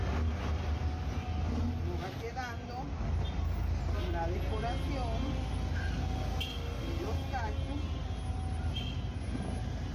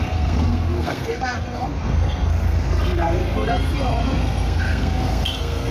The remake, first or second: second